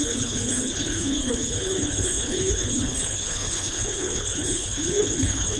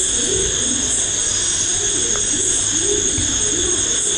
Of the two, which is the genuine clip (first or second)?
second